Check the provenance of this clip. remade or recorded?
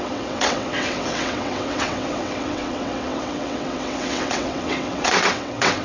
remade